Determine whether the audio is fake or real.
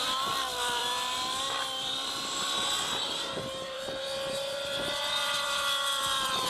fake